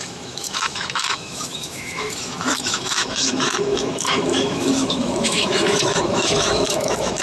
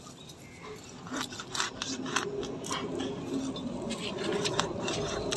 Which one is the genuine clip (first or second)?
second